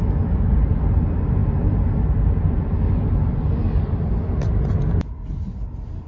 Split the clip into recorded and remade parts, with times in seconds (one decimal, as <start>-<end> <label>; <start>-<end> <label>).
0.0-6.1 recorded